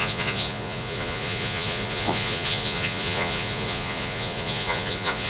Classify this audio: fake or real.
fake